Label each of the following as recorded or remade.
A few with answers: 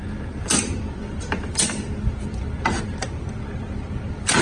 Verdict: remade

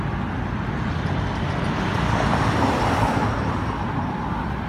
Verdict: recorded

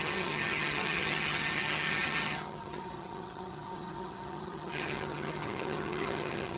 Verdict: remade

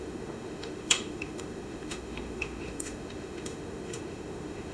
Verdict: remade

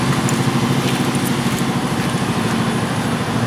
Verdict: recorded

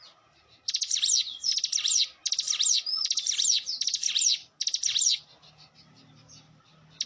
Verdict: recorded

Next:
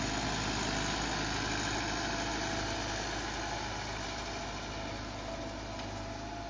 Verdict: recorded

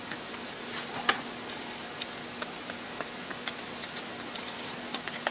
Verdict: recorded